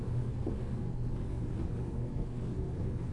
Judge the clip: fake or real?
fake